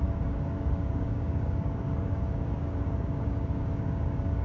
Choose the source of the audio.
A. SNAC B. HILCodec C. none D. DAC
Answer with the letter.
D